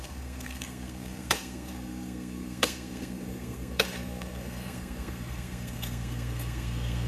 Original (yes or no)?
no